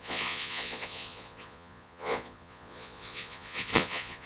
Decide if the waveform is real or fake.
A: fake